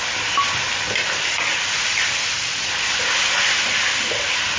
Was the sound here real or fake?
real